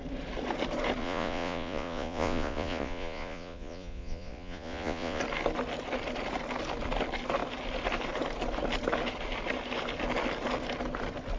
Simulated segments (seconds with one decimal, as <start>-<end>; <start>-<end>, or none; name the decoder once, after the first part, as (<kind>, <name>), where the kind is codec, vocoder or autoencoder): 1.0-5.2 (vocoder, Vocos)